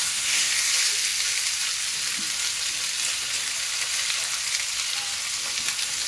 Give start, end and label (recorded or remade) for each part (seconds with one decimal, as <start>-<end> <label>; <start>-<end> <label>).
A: 0.0-0.5 remade; 0.5-6.1 recorded